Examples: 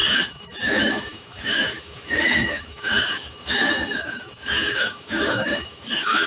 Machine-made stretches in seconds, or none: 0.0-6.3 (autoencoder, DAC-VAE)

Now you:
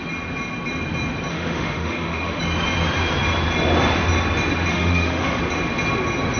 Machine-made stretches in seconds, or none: 1.3-2.4 (autoencoder, DAC-VAE); 4.7-5.4